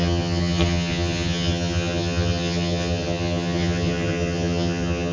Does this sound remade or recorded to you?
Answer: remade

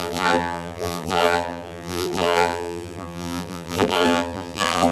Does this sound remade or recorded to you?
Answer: remade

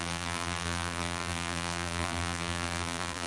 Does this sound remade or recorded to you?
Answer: remade